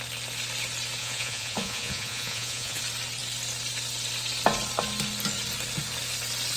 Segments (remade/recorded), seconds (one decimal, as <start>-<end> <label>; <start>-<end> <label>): 0.0-1.0 recorded; 1.0-2.8 remade; 2.8-6.6 recorded